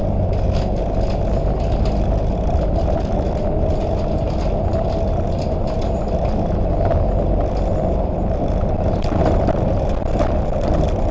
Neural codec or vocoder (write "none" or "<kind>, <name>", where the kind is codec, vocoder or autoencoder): none